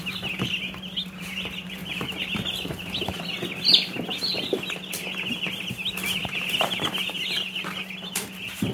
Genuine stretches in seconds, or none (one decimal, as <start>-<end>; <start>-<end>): 0.0-1.8; 3.2-8.7